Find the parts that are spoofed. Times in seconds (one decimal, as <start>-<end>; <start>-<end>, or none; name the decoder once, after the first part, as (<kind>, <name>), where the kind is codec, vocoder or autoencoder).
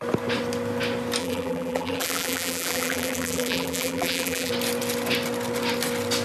1.2-4.5 (vocoder, BigVGAN v2)